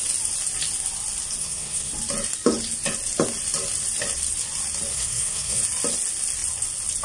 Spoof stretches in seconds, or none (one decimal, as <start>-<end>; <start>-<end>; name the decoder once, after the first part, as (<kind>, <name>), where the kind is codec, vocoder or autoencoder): 1.4-1.9 (codec, SNAC); 4.9-5.6